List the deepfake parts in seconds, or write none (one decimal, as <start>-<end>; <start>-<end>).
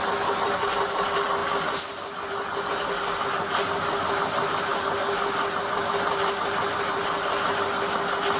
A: none